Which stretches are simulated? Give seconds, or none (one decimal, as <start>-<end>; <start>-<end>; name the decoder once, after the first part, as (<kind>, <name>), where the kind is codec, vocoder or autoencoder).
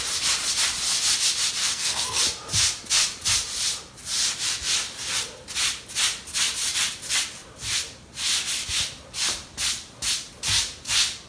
1.6-2.2 (codec, SNAC)